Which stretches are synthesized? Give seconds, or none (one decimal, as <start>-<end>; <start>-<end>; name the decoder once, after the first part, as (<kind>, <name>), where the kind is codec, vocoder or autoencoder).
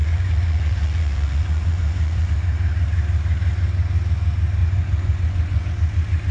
0.0-2.3 (vocoder, Vocos); 4.6-5.7